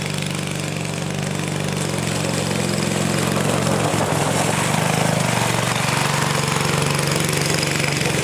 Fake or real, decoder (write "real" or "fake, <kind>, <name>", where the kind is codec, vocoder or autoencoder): real